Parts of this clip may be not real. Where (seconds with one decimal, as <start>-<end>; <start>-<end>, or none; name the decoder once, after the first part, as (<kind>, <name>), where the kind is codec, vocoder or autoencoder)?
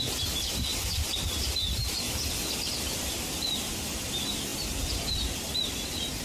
0.7-3.2 (vocoder, BigVGAN v2)